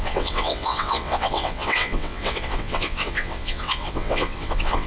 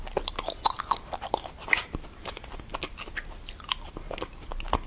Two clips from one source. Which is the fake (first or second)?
first